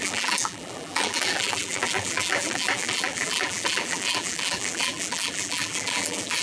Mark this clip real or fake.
fake